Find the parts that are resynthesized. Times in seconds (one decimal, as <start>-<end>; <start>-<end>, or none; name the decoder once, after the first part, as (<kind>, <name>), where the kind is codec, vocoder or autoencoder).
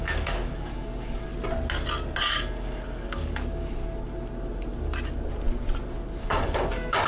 0.0-1.3 (codec, DAC); 2.2-3.8; 6.2-7.1